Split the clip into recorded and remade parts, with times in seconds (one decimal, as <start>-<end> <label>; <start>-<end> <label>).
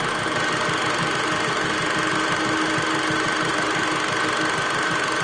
0.0-5.2 recorded